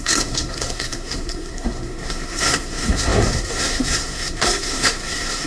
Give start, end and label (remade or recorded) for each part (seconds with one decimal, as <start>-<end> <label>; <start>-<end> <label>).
0.0-5.5 remade